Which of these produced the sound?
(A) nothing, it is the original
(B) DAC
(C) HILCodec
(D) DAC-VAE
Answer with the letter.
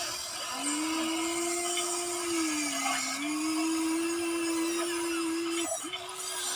A